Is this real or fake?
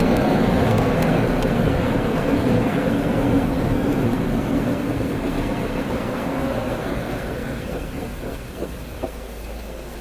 fake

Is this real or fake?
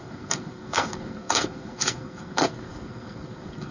fake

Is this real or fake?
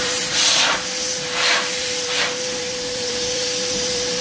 fake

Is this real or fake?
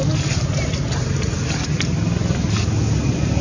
real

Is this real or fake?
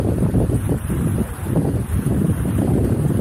fake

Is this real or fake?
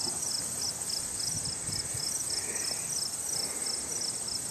real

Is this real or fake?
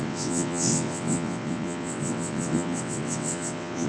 fake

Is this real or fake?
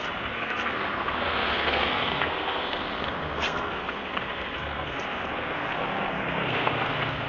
fake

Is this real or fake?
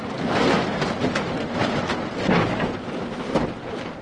real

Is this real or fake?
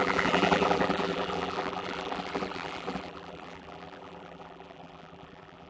fake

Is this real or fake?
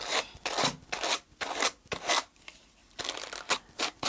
real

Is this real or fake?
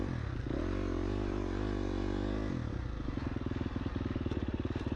real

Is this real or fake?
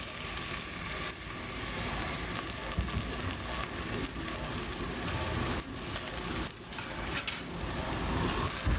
real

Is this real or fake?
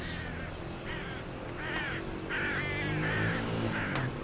real